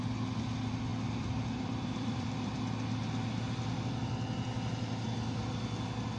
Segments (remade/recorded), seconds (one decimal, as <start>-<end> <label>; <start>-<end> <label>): 0.0-0.9 recorded; 0.9-3.3 remade; 3.3-6.2 recorded